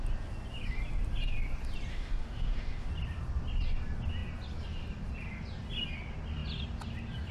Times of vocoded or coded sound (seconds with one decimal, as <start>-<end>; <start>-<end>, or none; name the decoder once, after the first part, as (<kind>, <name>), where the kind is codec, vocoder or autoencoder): 1.9-2.9 (autoencoder, DAC-VAE)